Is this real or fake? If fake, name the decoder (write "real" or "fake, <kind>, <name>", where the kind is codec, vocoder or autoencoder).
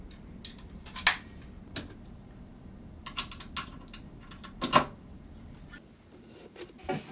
real